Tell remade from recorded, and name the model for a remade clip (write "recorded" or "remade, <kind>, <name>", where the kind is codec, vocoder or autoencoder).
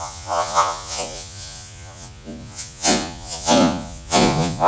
remade, vocoder, Vocos